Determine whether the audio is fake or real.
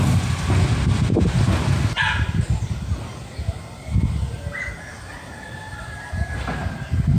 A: real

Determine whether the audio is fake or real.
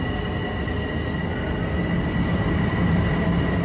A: real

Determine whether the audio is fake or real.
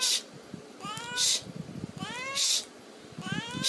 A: real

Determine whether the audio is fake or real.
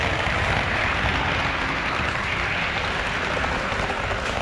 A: real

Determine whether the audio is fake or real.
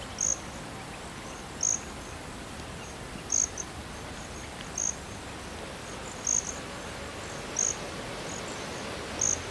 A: real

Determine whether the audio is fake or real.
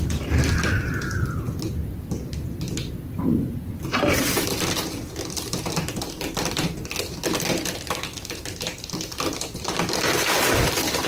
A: real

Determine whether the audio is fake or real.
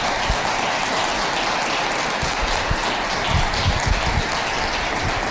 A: real